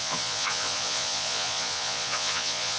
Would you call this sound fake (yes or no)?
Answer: yes